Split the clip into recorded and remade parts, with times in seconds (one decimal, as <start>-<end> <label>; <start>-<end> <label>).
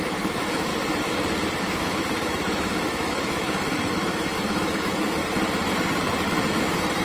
0.0-0.7 remade; 0.7-1.6 recorded; 1.6-5.2 remade; 5.2-7.0 recorded